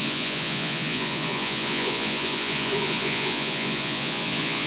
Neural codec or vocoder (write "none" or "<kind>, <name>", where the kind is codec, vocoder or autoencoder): vocoder, Vocos